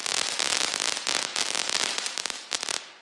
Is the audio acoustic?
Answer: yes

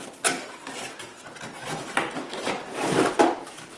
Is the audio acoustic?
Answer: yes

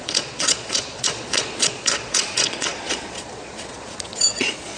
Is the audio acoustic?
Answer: no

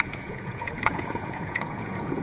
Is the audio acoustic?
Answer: no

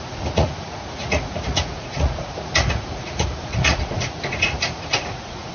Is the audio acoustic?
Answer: no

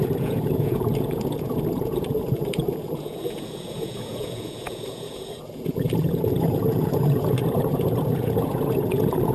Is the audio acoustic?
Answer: no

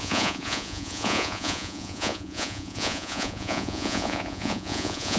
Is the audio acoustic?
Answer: no